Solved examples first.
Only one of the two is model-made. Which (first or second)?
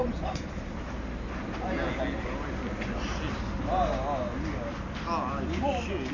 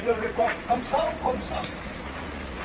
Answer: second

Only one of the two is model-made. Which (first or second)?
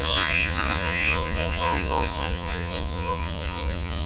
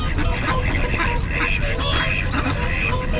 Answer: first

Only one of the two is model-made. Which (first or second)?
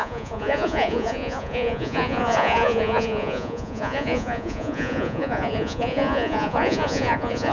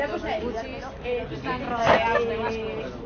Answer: first